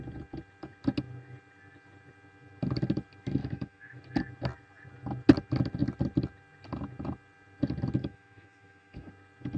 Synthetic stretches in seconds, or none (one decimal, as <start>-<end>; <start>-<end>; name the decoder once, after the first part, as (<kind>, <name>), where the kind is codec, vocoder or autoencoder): 3.4-4.0 (autoencoder, DAC-VAE); 8.0-9.1